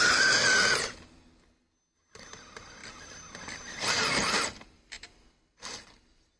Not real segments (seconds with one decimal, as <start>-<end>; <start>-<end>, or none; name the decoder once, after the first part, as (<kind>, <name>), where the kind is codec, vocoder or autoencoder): none